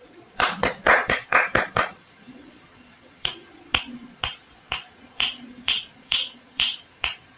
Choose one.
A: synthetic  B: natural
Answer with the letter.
A